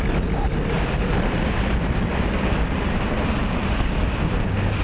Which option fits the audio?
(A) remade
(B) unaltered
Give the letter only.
B